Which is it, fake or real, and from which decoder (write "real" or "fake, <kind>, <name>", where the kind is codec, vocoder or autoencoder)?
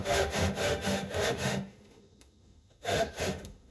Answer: fake, autoencoder, DAC-VAE